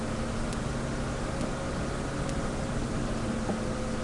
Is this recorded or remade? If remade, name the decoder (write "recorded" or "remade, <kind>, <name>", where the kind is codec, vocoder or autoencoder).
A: recorded